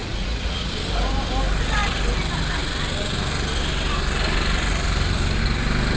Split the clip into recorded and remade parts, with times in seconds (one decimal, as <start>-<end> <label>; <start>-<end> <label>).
0.0-0.7 remade; 0.7-6.0 recorded

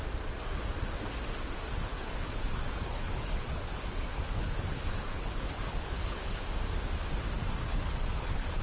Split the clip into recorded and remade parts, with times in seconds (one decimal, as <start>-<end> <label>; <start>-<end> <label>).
0.0-1.9 recorded; 1.9-6.4 remade; 6.4-7.6 recorded; 7.6-8.6 remade

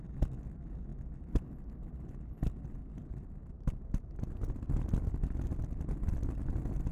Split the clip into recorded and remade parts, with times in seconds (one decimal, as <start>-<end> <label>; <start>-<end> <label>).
0.0-2.8 recorded; 2.8-4.1 remade; 4.1-6.9 recorded

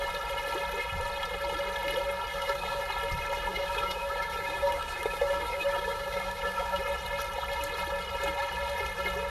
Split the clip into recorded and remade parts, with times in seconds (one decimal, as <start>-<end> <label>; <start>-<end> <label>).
0.0-2.3 recorded; 2.3-2.8 remade; 2.8-3.5 recorded; 3.5-6.8 remade; 6.8-9.3 recorded

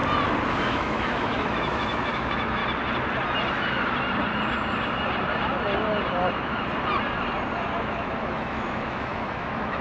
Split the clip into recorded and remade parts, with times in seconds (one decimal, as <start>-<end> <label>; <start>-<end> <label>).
0.0-0.7 recorded; 0.7-2.6 remade; 2.6-7.6 recorded; 7.6-9.8 remade